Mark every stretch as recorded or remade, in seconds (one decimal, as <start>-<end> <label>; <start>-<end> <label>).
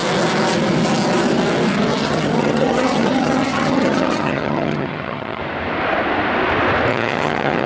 0.0-2.0 recorded; 2.0-5.4 remade; 5.4-6.9 recorded; 6.9-7.7 remade